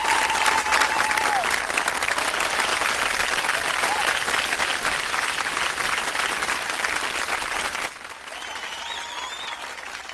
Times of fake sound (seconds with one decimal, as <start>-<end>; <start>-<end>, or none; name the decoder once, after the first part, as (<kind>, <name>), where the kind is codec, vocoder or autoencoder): none